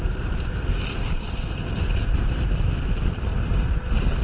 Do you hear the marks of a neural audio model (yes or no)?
yes